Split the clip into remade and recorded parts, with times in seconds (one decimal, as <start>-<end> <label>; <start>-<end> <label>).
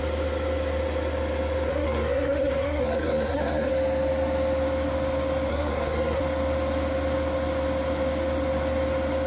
0.0-1.7 recorded; 1.7-3.7 remade; 3.7-5.5 recorded; 5.5-6.2 remade; 6.2-9.3 recorded